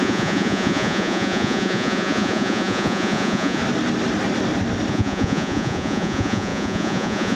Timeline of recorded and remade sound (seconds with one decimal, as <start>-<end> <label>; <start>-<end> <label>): 0.0-3.6 remade; 3.6-4.9 recorded; 4.9-7.4 remade